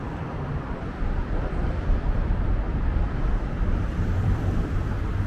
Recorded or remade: remade